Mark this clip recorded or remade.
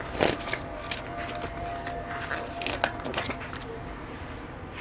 recorded